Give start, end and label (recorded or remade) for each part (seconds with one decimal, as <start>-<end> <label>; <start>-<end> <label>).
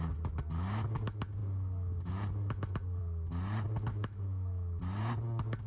0.0-3.9 recorded; 3.9-4.8 remade; 4.8-5.7 recorded